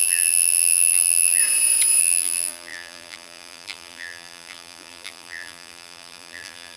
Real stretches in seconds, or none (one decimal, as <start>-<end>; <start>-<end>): 1.4-2.0